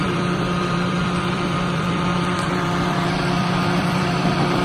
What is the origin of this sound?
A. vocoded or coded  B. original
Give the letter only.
A